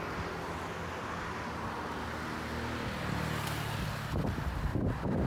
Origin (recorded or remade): recorded